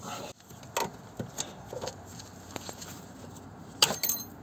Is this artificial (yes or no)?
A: no